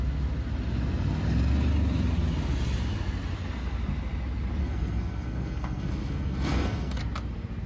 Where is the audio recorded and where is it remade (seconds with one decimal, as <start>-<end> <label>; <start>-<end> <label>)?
0.0-4.6 recorded; 4.6-7.0 remade; 7.0-7.7 recorded